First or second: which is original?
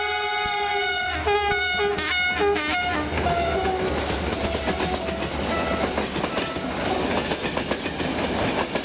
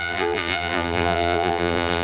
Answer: first